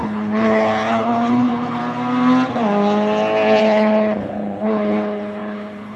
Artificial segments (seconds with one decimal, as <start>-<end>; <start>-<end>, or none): 0.0-1.8; 3.6-6.0